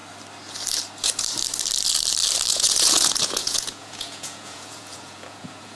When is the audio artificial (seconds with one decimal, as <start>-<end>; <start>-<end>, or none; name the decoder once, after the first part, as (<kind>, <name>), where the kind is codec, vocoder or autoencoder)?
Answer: 2.5-5.8 (vocoder, Vocos)